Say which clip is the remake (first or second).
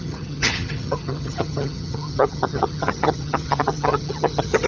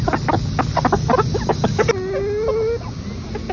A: first